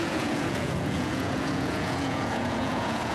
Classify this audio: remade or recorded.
remade